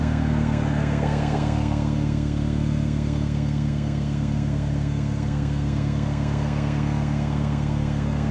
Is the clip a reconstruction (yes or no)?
yes